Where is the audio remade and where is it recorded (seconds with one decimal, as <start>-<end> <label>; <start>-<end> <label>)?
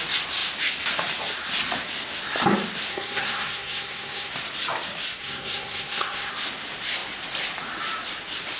0.0-2.9 recorded; 2.9-4.3 remade; 4.3-5.2 recorded; 5.2-6.3 remade; 6.3-8.6 recorded